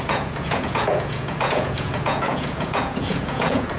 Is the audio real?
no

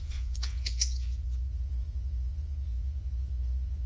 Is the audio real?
no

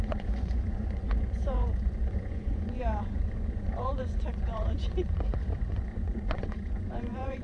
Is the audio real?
no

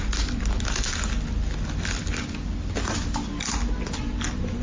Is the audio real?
yes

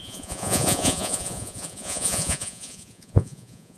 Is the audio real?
no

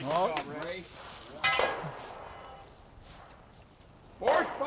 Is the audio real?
yes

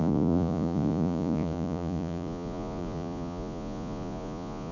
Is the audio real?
no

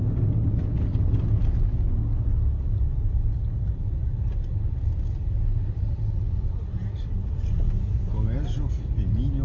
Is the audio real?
yes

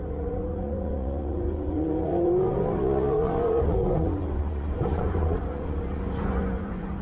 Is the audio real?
no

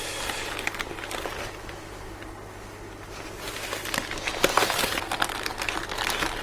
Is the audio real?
yes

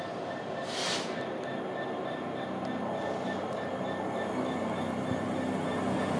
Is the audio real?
yes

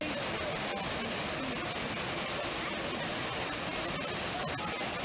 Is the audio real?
yes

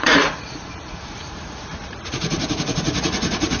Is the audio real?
no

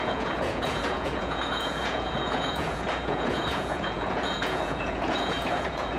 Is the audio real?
no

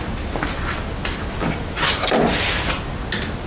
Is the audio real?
yes